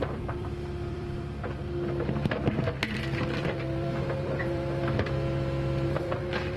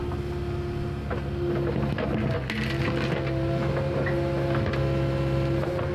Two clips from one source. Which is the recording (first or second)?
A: second